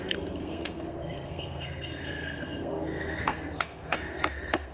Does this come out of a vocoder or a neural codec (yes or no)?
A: yes